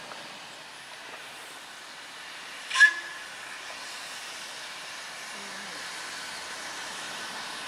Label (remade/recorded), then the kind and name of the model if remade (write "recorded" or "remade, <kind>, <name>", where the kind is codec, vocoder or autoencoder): recorded